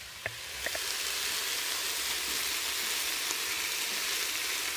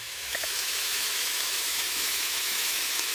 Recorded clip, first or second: first